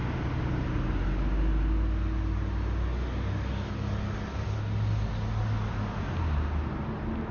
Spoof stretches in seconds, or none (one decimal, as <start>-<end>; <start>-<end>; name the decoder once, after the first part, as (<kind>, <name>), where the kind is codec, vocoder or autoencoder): none